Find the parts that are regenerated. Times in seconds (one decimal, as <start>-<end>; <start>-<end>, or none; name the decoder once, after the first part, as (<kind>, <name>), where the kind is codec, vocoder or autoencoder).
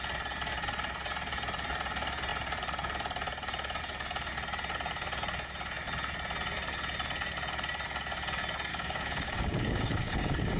8.7-10.6 (codec, DAC)